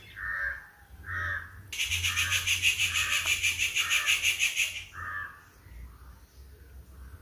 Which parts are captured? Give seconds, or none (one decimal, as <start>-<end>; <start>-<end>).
0.0-2.3; 3.8-7.2